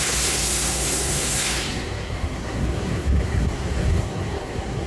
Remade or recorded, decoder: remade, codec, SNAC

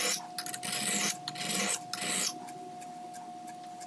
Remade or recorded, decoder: recorded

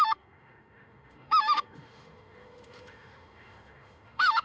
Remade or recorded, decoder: remade, autoencoder, DAC-VAE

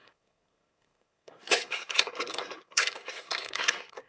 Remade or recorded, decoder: remade, codec, SNAC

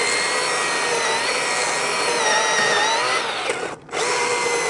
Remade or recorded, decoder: recorded